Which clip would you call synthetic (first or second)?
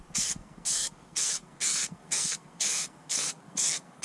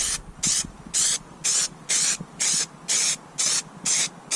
first